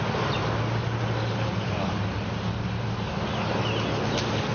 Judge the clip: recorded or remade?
recorded